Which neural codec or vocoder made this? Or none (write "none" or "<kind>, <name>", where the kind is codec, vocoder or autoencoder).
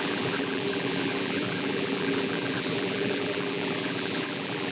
vocoder, BigVGAN v2